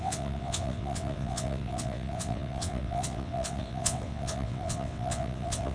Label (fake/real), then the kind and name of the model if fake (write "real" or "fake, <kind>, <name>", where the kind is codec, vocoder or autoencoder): fake, vocoder, WaveNeXt